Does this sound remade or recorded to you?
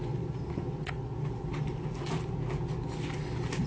recorded